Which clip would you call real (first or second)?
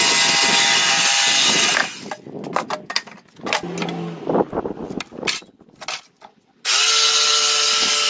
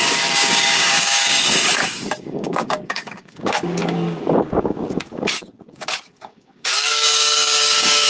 first